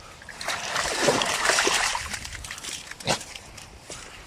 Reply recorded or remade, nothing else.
remade